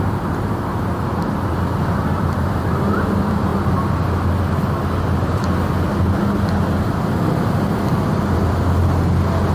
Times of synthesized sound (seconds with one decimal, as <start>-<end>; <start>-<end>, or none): none